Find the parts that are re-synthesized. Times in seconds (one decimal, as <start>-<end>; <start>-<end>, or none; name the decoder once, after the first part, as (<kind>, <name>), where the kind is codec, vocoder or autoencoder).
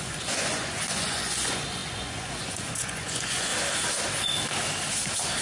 0.0-3.5 (vocoder, Vocos)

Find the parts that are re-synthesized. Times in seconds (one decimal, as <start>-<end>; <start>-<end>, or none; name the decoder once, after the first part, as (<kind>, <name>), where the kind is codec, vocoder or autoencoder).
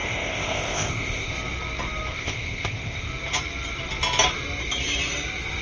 0.0-1.3 (codec, ZipCodec); 2.1-3.1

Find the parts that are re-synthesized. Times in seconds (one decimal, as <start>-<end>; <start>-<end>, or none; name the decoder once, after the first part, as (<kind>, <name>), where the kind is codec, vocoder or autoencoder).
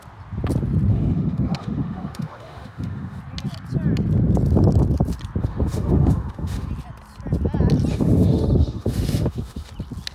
0.9-3.2 (autoencoder, DAC-VAE); 5.4-6.7; 7.9-9.7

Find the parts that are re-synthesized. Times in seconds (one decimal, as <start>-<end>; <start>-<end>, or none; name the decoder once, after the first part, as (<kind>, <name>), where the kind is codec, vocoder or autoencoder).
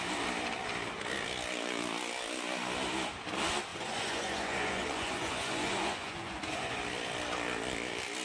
3.7-6.8 (vocoder, Vocos)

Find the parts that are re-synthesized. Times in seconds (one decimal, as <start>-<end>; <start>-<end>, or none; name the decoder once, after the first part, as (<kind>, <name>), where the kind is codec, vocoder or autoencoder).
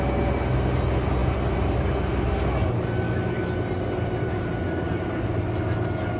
none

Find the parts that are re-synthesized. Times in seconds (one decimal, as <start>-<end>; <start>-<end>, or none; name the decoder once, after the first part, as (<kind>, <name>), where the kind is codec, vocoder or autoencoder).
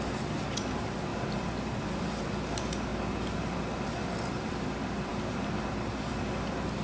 0.0-2.9 (vocoder, BigVGAN v2); 4.2-5.1; 5.7-6.8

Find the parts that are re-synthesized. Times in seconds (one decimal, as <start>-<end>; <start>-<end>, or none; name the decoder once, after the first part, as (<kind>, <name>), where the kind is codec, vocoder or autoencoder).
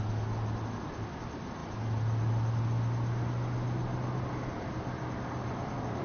none